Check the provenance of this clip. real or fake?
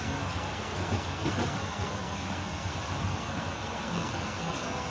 fake